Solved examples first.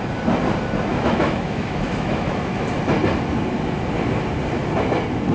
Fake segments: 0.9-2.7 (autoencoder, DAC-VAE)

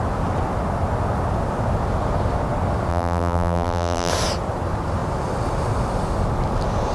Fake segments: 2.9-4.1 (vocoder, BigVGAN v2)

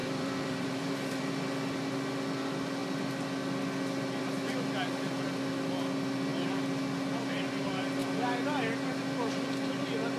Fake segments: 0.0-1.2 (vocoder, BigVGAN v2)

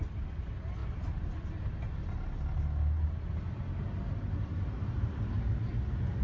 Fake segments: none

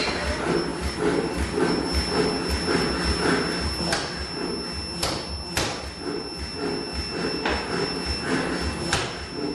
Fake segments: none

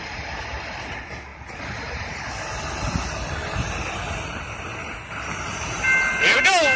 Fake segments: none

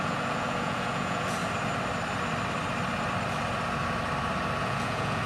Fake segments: 0.0-1.4 (vocoder, Vocos); 4.6-5.3